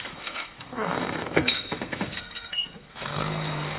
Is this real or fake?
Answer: fake